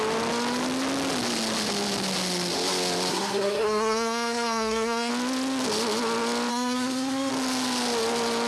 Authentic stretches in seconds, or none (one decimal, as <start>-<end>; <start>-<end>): 0.0-3.1; 5.1-6.5; 7.3-8.5